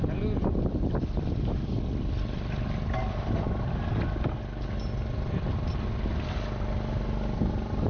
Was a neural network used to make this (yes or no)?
no